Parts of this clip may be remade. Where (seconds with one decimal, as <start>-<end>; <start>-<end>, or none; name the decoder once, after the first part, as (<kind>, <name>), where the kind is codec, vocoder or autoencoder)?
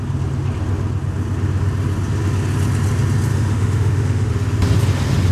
3.3-4.3 (autoencoder, DAC-VAE)